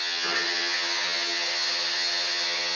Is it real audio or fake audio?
fake